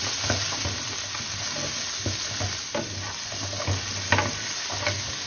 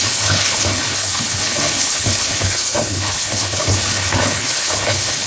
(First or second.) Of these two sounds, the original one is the first